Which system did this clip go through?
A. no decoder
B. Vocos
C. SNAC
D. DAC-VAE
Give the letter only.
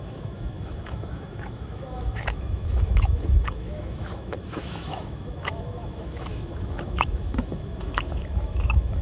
D